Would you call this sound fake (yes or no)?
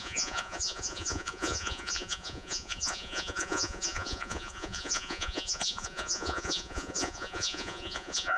yes